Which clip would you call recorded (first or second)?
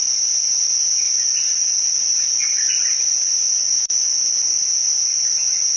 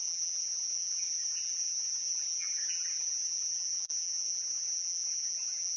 first